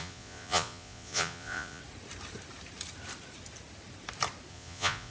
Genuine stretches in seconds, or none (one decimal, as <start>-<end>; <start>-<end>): 1.8-4.5